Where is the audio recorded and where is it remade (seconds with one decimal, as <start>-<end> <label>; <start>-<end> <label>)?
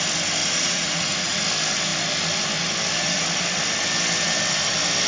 0.0-0.4 recorded; 0.4-1.4 remade; 1.4-5.1 recorded